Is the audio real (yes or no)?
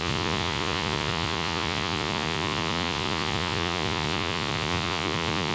no